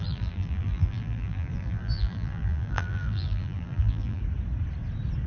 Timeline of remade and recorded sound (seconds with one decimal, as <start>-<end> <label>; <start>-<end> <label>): 0.0-4.2 remade; 4.2-5.3 recorded